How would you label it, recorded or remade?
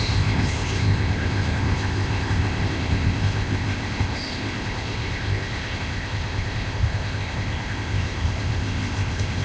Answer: remade